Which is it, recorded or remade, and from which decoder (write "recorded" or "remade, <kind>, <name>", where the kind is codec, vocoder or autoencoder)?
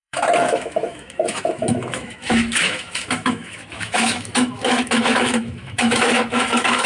remade, autoencoder, DAC-VAE